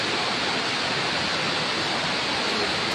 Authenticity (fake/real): real